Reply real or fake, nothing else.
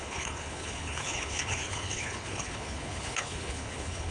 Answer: fake